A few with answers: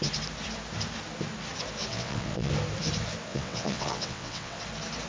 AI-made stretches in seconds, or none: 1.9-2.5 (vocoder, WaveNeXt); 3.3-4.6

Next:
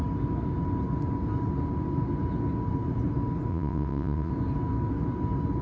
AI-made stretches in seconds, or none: 3.5-4.3 (vocoder, WaveNeXt)

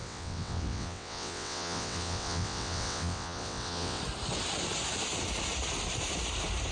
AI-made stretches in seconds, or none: 0.0-4.0 (vocoder, WaveNeXt)